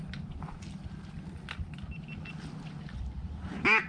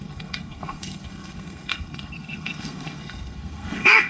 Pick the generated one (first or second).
second